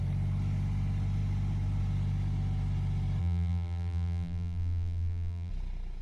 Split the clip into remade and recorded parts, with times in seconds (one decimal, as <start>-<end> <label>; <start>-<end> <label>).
0.0-3.2 recorded; 3.2-5.5 remade; 5.5-6.0 recorded